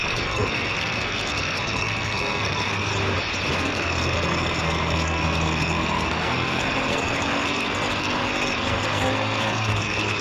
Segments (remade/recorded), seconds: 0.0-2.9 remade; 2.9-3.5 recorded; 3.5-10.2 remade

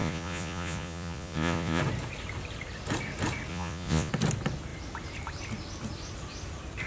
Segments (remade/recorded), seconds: 0.0-1.8 remade; 1.8-3.5 recorded; 3.5-4.1 remade; 4.1-6.9 recorded

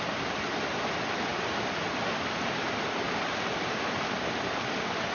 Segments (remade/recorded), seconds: 0.0-5.1 recorded

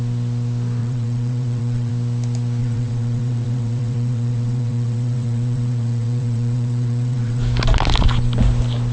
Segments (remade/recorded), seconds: 0.0-0.8 recorded; 0.8-1.9 remade; 1.9-2.6 recorded; 2.6-7.4 remade; 7.4-8.9 recorded

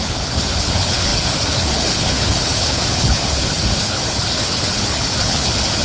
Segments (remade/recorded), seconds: 0.0-5.8 remade

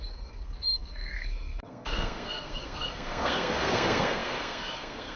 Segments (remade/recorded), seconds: 0.0-5.2 remade

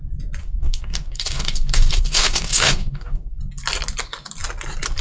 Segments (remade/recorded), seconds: 0.0-0.4 recorded; 0.4-3.4 remade; 3.4-5.0 recorded

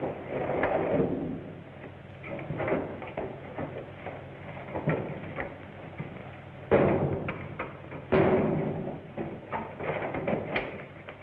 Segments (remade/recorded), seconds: 0.0-2.7 recorded; 2.7-3.7 remade; 3.7-11.2 recorded